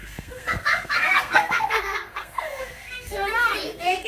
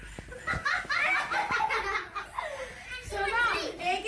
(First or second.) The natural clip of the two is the second